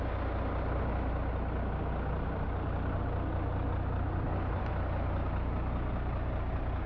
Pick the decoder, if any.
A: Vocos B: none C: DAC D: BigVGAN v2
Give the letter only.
B